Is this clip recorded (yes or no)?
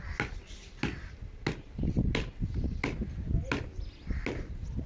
yes